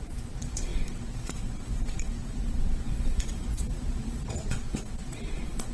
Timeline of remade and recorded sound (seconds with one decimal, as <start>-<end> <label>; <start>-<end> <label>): 0.0-5.7 remade